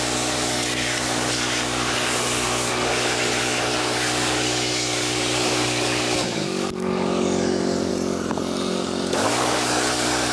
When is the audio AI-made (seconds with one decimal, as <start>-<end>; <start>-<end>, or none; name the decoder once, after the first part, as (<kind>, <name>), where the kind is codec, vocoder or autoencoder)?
0.0-7.9 (codec, DAC); 8.7-10.3